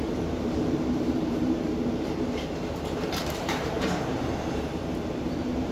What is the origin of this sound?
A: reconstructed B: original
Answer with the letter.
A